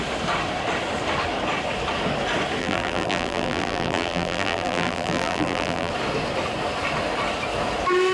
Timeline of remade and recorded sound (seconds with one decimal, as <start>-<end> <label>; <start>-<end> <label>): 0.0-2.6 recorded; 2.6-5.9 remade; 5.9-8.1 recorded